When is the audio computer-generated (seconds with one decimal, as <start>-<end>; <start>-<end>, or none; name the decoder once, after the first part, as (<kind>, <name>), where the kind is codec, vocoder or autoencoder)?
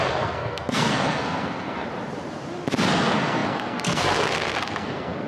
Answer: 0.0-1.8 (codec, SNAC); 2.9-5.3